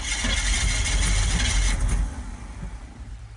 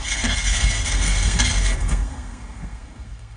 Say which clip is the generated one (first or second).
second